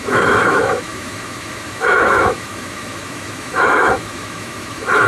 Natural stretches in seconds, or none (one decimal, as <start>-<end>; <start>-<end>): none